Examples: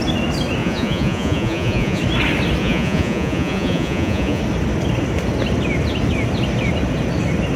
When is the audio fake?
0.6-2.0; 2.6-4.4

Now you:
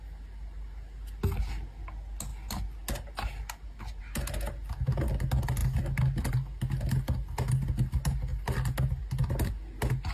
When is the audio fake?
none

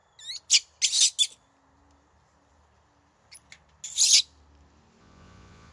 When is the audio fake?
5.0-5.7

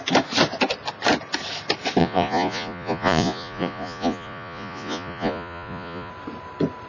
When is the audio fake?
2.0-6.1

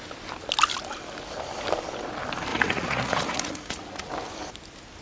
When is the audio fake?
2.5-4.1

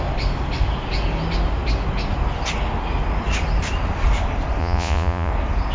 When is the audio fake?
4.6-5.3